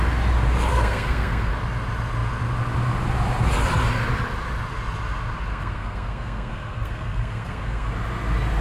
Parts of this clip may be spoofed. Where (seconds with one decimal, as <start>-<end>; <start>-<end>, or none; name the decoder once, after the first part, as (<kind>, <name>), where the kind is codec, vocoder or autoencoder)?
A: 0.7-1.5 (codec, SNAC); 5.5-7.9